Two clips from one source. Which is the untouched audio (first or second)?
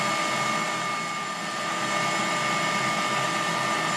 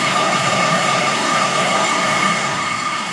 first